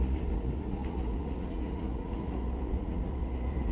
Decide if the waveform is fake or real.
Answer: fake